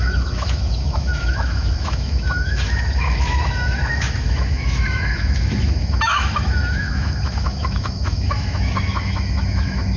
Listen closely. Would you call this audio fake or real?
fake